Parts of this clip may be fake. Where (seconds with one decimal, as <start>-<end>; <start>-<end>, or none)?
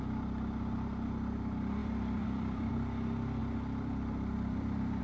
1.8-2.7; 3.4-5.0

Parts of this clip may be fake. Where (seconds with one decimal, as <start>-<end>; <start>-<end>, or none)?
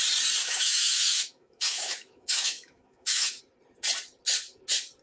0.4-3.4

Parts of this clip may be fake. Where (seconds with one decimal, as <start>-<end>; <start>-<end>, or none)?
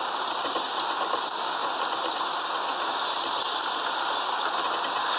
1.6-4.7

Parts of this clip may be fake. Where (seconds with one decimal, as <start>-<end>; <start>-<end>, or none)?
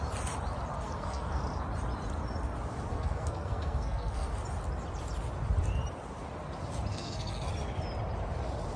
0.7-1.4; 2.9-4.3; 6.9-7.5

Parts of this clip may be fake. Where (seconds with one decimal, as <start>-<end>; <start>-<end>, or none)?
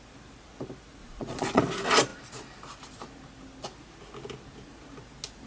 1.0-1.6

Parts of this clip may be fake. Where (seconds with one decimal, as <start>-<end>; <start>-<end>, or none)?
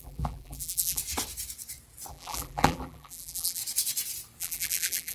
0.0-1.0; 2.1-3.6; 4.4-5.1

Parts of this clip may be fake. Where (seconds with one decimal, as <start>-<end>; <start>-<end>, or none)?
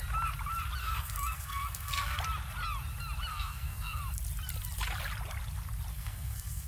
0.8-2.2; 3.3-4.0; 5.9-6.7